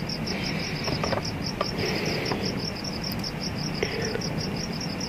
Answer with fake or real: real